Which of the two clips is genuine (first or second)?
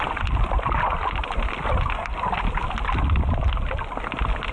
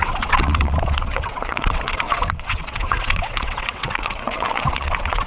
first